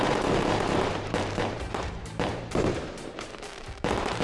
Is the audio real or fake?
fake